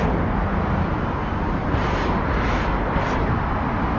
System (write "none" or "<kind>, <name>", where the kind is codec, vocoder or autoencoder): none